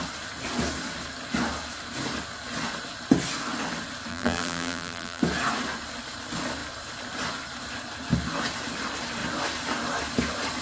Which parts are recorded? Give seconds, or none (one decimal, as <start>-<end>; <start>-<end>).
0.0-4.1; 5.2-10.6